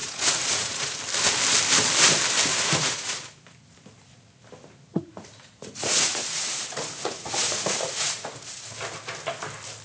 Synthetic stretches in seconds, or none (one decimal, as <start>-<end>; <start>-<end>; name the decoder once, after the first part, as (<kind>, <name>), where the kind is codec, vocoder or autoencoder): 0.0-1.0 (vocoder, Vocos); 2.5-3.2; 4.9-8.7

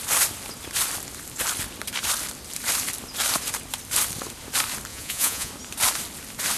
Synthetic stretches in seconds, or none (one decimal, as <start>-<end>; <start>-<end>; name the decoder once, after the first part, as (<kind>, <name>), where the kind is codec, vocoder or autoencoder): 4.9-5.5 (vocoder, Vocos)